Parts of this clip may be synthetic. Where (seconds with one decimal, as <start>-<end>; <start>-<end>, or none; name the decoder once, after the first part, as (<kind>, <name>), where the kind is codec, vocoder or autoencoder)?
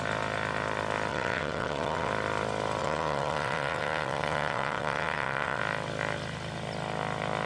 1.1-2.1 (vocoder, WaveNeXt); 2.8-5.6